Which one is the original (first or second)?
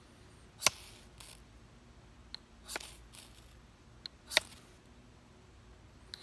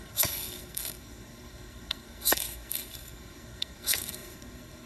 first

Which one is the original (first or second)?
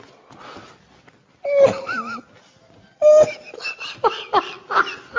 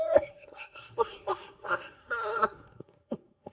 first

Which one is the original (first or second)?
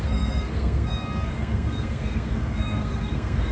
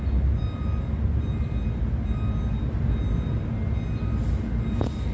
second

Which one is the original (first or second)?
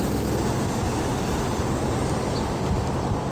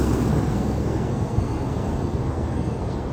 first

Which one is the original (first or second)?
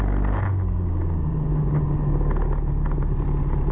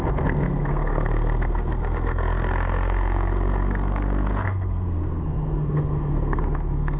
first